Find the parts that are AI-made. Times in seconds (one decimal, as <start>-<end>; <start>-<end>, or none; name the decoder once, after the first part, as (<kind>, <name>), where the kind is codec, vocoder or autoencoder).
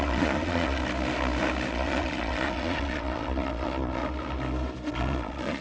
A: 0.0-0.8 (vocoder, Vocos); 1.7-4.0; 4.9-5.6